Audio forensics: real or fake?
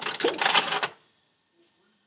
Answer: real